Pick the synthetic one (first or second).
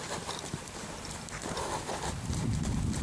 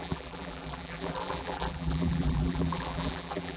second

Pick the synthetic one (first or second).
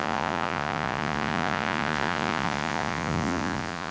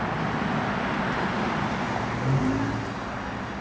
first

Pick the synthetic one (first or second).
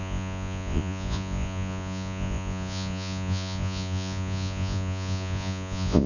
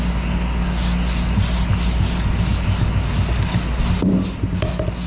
first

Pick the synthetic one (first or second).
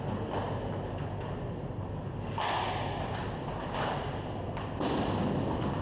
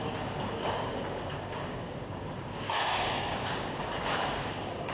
second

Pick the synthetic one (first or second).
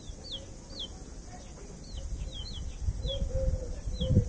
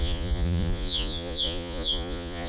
second